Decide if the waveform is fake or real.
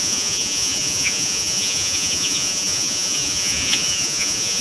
fake